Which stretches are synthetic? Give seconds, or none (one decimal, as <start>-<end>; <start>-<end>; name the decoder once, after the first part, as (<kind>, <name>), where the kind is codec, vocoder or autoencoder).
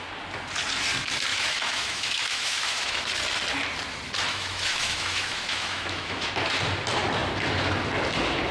1.3-3.1 (autoencoder, DAC-VAE); 4.3-6.3